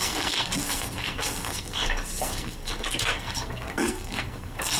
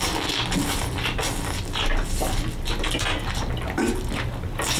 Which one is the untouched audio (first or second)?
second